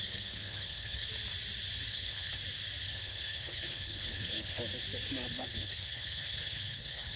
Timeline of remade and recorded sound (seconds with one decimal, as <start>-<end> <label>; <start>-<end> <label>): 0.0-1.1 remade; 1.1-1.9 recorded; 1.9-2.4 remade; 2.4-2.9 recorded; 2.9-4.6 remade; 4.6-5.3 recorded; 5.3-7.2 remade